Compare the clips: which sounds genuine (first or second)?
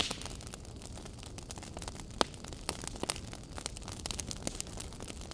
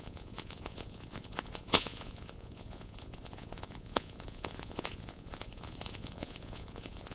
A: first